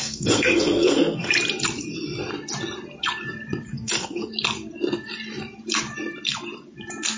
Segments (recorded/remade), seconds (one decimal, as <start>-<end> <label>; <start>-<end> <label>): 0.0-1.3 remade; 1.3-3.7 recorded; 3.7-4.3 remade; 4.3-7.2 recorded